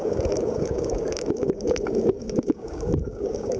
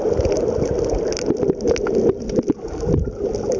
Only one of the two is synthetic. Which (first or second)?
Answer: first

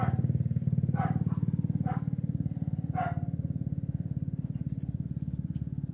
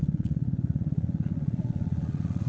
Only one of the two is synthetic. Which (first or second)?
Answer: second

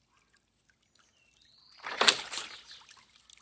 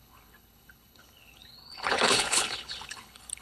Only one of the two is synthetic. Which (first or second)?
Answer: second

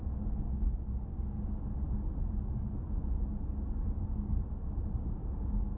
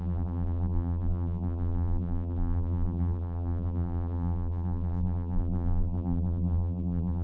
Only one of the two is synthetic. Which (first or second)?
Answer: second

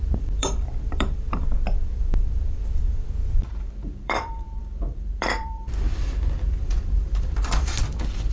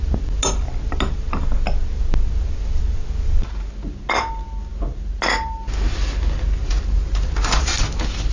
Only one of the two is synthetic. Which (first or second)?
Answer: first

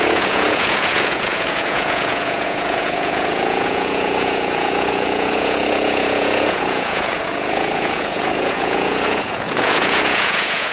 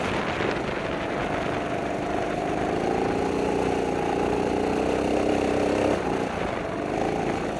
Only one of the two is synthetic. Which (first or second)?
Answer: first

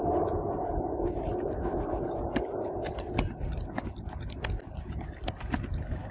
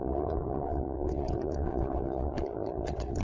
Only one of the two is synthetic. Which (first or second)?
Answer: second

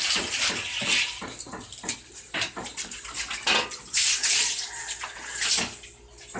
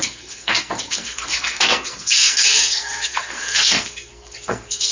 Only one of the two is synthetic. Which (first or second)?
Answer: second